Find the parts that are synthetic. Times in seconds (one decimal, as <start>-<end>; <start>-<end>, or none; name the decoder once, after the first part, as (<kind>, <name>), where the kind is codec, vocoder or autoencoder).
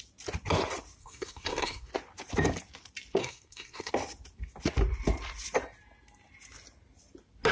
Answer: 1.0-1.9 (codec, SNAC); 3.2-3.9